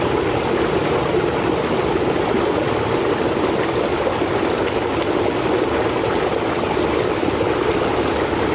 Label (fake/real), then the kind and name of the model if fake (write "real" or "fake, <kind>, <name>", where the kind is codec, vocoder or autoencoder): real